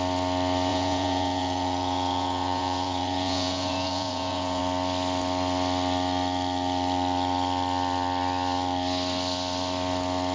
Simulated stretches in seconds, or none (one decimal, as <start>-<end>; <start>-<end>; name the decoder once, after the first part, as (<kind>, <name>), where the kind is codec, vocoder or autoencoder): 0.7-4.6 (vocoder, Vocos)